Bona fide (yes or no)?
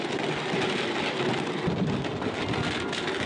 yes